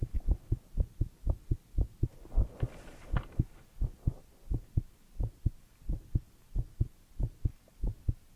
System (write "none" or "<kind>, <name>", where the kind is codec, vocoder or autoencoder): none